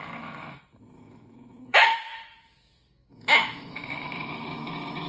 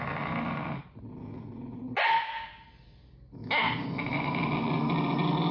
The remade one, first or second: first